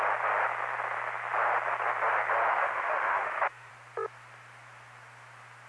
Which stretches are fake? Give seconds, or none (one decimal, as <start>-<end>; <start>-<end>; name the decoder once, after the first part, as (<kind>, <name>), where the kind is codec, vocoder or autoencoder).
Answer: 2.5-3.7 (autoencoder, DAC-VAE)